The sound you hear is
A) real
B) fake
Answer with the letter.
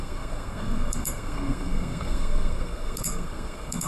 B